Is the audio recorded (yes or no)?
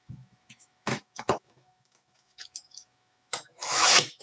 no